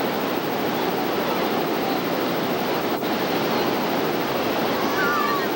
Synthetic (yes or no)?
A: no